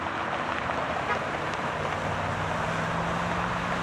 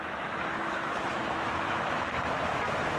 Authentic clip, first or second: first